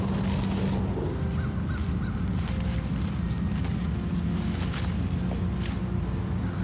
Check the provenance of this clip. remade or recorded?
recorded